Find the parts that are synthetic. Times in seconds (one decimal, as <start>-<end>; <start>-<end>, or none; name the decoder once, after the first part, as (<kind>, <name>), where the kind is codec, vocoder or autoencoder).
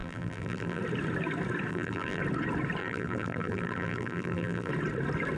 0.0-0.8 (vocoder, BigVGAN v2); 1.7-2.2; 2.8-4.7